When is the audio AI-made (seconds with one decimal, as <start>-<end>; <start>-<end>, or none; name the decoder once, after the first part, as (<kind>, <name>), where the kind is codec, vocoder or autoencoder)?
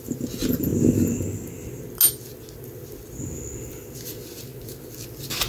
none